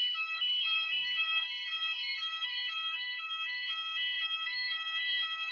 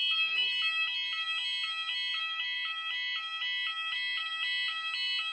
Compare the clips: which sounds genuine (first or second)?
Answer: second